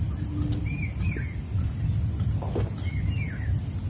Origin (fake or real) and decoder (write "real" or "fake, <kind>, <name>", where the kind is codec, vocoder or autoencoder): real